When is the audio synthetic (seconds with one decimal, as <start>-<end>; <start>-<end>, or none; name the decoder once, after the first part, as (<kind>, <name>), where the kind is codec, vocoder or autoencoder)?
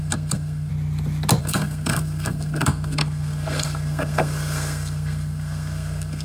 0.0-0.7 (codec, SNAC); 1.4-6.2